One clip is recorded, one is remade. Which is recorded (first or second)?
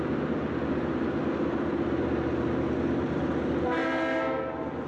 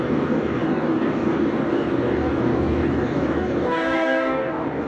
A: first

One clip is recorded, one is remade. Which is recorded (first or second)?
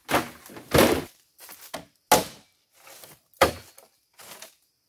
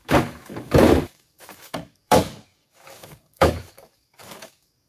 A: first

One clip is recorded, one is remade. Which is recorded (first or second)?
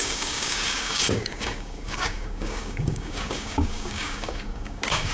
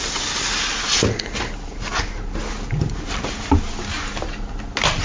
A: second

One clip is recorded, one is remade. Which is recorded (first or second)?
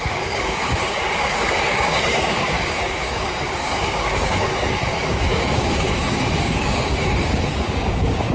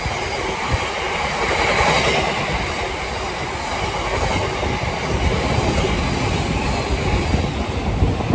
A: second